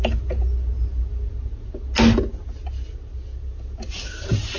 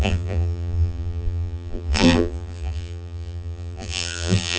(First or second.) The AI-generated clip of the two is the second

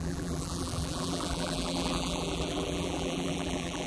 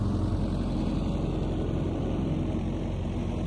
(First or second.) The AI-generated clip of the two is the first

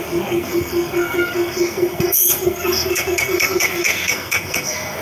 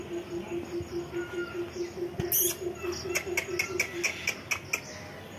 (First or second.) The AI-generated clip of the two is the first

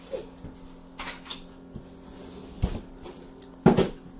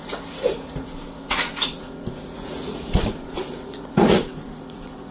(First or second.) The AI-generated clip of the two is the second